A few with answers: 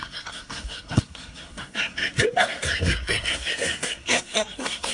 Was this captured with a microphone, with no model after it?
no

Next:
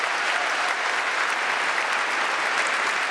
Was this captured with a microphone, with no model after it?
yes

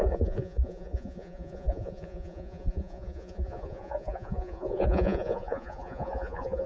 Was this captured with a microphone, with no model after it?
no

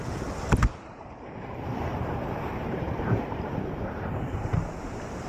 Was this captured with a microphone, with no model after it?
no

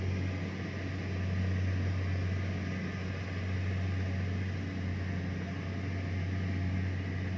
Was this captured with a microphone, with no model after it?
yes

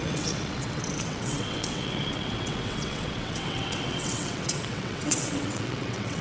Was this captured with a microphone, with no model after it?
no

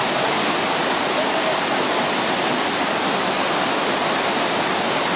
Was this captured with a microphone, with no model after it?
yes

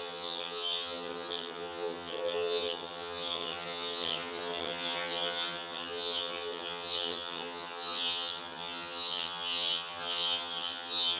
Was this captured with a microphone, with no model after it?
no